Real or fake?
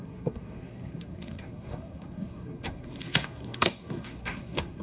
fake